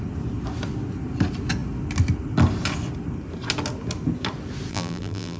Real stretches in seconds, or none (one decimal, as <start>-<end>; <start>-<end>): 0.0-4.7